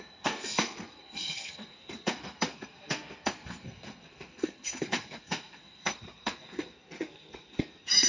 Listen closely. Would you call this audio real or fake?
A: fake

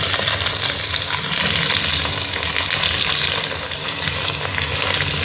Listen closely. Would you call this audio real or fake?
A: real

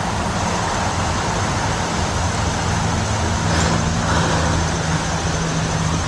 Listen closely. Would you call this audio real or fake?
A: real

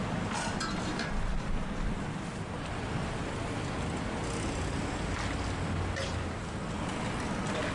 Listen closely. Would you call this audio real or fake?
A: real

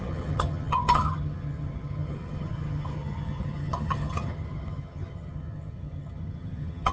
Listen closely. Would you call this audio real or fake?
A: fake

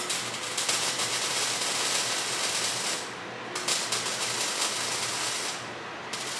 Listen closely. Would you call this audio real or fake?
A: real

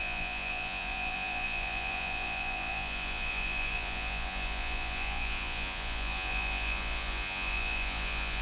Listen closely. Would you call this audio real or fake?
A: fake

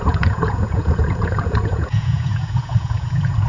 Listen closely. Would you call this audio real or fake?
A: fake